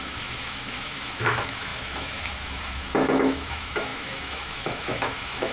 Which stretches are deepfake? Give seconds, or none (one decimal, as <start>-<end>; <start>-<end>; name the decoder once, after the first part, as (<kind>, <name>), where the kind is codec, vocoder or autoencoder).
0.0-5.5 (autoencoder, DAC-VAE)